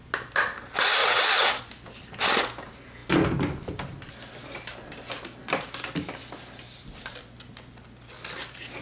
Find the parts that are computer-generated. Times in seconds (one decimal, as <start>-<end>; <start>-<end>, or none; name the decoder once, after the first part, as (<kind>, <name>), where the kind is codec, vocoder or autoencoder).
1.0-1.6 (vocoder, WaveNeXt)